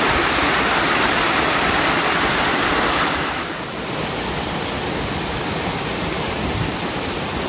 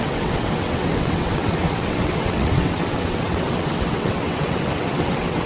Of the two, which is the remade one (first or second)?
second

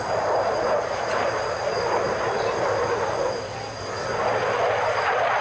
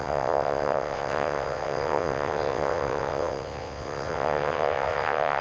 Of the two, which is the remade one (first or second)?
second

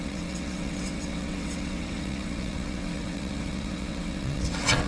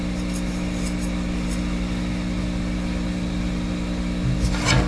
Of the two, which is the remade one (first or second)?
first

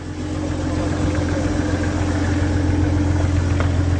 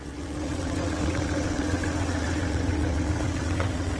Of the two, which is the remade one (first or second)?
second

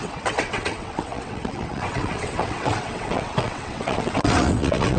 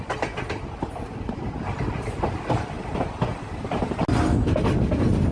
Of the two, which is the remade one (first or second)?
first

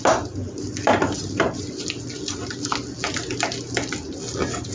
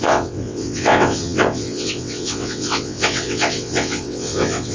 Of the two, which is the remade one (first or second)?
second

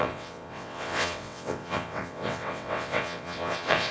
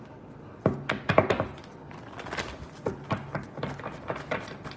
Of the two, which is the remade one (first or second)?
first